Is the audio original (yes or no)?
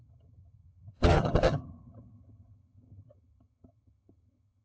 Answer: no